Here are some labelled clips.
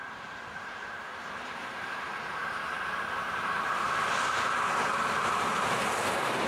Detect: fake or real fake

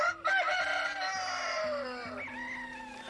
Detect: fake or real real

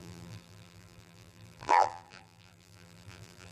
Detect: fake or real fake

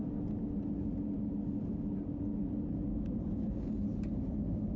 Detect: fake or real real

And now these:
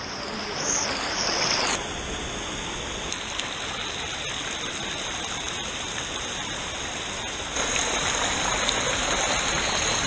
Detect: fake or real real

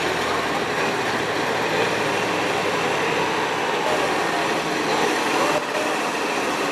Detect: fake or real real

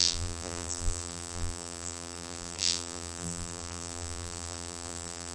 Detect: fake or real fake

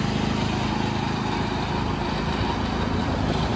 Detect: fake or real real